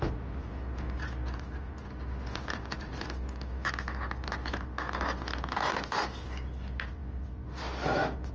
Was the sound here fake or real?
real